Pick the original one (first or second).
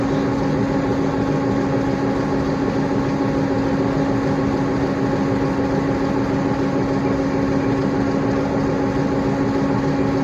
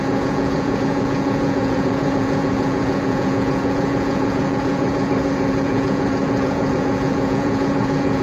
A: first